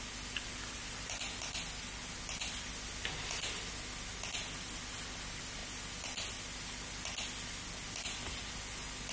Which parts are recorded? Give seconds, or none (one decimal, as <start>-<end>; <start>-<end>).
0.0-9.1